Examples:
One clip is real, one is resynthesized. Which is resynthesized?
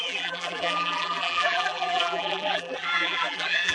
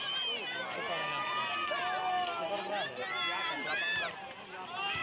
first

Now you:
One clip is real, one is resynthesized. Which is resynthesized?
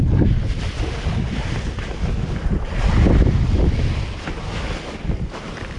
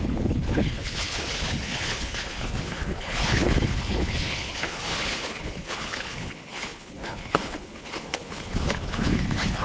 second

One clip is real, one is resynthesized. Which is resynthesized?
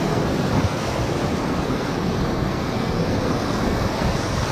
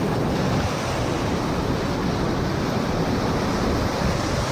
first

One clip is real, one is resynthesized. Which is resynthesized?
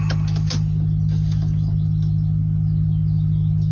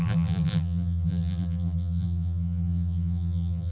second